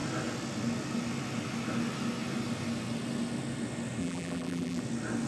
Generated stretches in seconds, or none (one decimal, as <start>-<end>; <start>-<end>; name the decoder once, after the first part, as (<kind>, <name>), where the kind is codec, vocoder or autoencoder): 4.0-4.8 (vocoder, BigVGAN v2)